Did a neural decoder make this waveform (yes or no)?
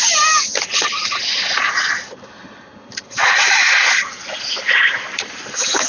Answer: no